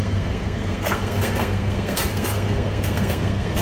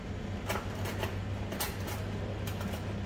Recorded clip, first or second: second